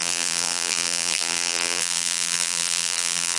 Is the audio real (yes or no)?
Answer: no